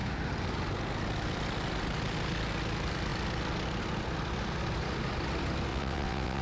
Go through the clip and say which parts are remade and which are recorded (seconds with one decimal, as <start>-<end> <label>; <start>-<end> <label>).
0.0-5.7 recorded; 5.7-6.4 remade